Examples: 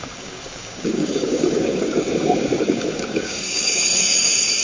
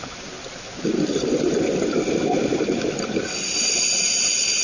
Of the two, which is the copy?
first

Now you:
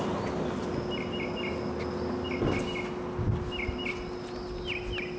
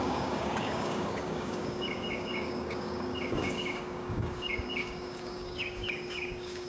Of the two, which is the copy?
second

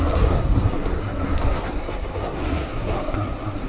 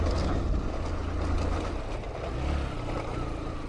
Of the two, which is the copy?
first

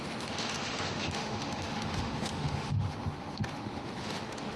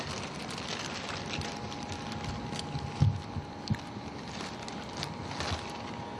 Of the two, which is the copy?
first